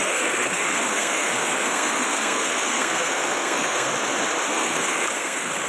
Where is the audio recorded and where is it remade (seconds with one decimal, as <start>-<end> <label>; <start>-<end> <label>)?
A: 0.0-3.9 remade; 3.9-4.5 recorded; 4.5-5.7 remade